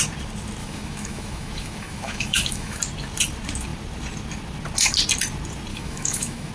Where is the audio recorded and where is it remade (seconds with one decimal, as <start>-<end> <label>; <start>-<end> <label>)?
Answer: 0.0-0.6 recorded; 0.6-2.8 remade; 2.8-5.7 recorded; 5.7-6.5 remade